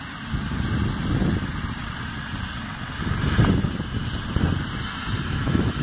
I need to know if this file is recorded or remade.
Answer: recorded